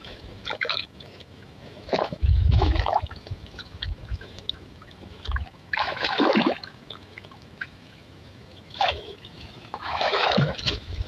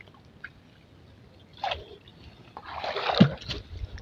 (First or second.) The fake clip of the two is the first